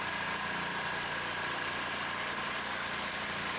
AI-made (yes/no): no